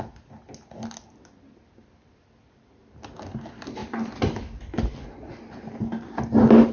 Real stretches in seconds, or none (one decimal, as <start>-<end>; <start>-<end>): 0.0-6.7